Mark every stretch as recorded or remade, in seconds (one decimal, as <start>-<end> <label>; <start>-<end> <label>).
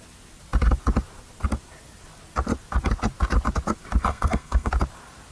0.0-4.1 recorded; 4.1-4.7 remade; 4.7-5.3 recorded